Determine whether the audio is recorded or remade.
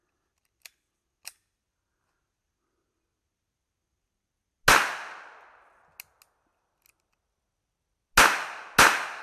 recorded